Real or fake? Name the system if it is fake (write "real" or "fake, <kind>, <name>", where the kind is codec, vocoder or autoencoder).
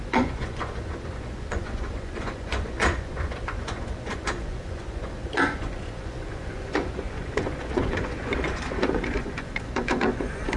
fake, vocoder, Vocos